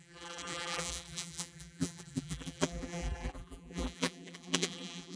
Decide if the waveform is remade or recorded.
remade